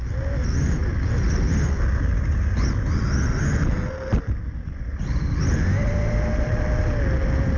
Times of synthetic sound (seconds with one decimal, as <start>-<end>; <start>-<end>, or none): none